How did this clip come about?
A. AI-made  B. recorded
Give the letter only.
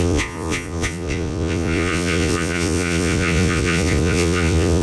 A